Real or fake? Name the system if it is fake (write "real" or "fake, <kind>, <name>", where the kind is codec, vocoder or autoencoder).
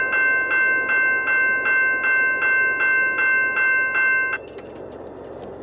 real